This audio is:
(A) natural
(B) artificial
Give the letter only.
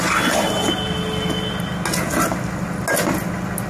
A